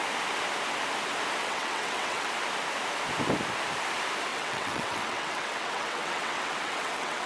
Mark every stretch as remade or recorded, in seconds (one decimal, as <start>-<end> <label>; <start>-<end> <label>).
0.0-1.4 recorded; 1.4-2.3 remade; 2.3-4.3 recorded; 4.3-7.3 remade